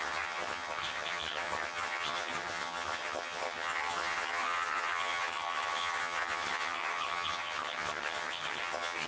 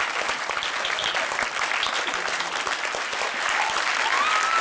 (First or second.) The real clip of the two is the second